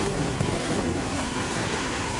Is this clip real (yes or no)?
no